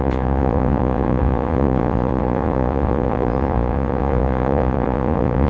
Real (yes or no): no